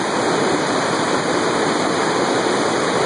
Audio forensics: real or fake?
fake